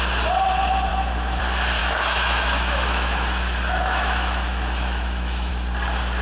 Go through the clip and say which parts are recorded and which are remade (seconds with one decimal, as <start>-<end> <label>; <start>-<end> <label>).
0.0-0.9 recorded; 0.9-1.4 remade; 1.4-1.8 recorded; 1.8-5.5 remade; 5.5-6.2 recorded